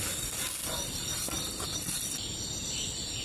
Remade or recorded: recorded